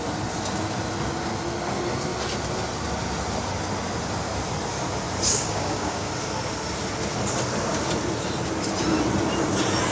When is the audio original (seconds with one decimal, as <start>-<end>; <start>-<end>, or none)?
0.0-5.3; 6.1-9.9